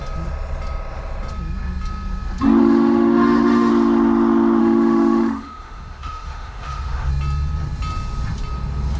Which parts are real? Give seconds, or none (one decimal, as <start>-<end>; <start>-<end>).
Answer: 0.0-2.6; 3.7-4.6; 7.1-9.0